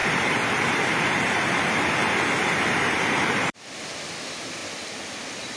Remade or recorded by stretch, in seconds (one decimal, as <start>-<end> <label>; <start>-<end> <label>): 0.0-1.5 remade; 1.5-2.4 recorded; 2.4-3.5 remade; 3.5-5.6 recorded